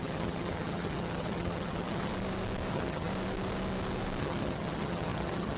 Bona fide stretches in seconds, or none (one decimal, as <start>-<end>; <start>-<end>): 2.1-2.7; 3.1-4.2